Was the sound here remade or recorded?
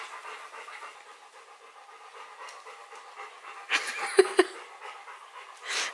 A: recorded